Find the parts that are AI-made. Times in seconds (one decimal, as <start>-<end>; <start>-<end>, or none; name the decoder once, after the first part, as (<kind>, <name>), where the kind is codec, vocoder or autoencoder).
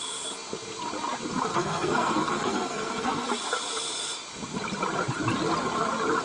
1.5-3.3 (codec, SNAC)